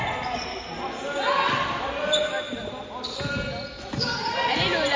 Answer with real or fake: real